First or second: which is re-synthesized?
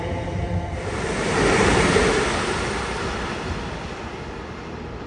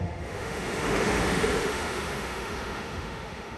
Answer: second